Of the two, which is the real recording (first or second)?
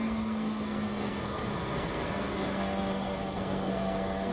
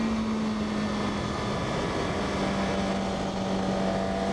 second